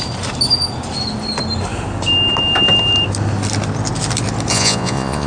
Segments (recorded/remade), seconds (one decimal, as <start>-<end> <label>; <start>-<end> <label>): 0.0-4.5 recorded; 4.5-5.3 remade